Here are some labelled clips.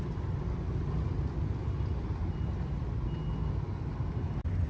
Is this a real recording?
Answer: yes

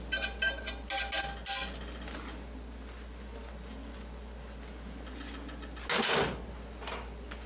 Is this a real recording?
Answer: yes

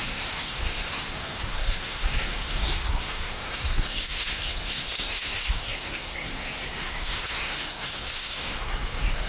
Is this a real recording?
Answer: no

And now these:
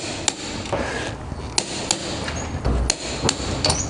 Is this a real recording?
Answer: yes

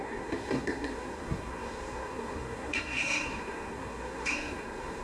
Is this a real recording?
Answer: no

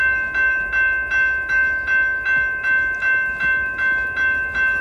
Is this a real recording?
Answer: yes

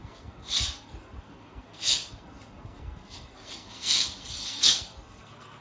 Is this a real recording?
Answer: no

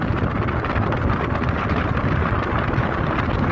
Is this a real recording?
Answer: yes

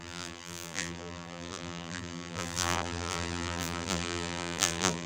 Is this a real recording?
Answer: no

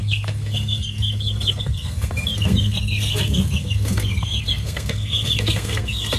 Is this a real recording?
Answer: no